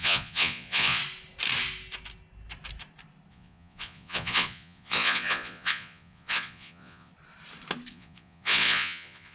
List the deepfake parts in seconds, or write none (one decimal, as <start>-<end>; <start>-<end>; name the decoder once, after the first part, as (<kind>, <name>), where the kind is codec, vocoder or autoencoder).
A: 0.0-1.0 (vocoder, Vocos); 3.3-7.1; 7.9-9.3